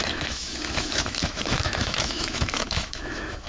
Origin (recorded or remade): remade